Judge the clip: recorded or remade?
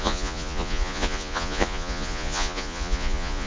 remade